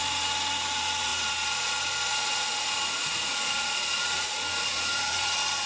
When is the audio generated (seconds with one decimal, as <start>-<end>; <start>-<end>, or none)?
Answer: 0.0-5.7

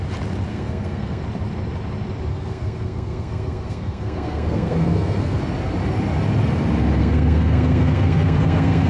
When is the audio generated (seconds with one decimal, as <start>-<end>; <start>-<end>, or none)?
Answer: 0.5-1.2; 2.3-5.4; 7.0-8.9

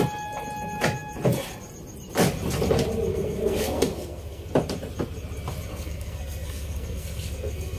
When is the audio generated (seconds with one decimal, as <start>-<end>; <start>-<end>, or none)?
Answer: 3.1-4.5; 5.7-7.8

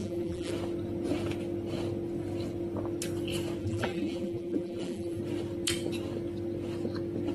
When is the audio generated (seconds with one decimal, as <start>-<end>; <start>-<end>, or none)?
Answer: 0.0-0.5; 3.6-5.2

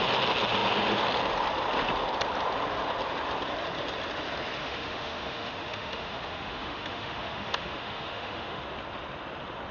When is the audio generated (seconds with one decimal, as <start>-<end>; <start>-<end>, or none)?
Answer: 4.6-8.6

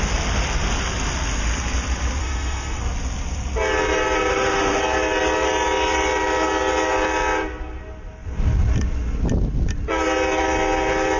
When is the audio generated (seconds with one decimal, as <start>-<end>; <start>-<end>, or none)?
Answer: 2.2-2.8; 4.3-4.8